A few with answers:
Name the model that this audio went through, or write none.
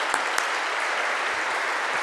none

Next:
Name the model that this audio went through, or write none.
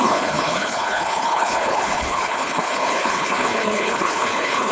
codec, HILCodec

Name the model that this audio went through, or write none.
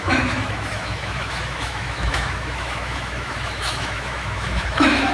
autoencoder, DAC-VAE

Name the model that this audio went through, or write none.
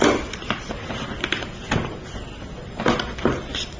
none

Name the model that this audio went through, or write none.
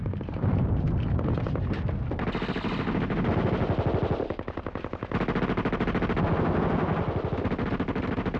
none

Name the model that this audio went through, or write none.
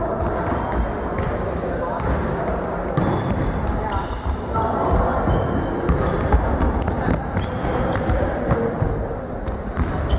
none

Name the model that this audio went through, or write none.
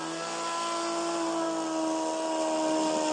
none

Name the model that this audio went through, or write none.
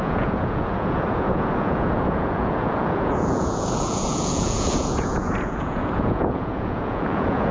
vocoder, Vocos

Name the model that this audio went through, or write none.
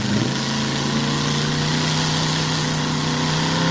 none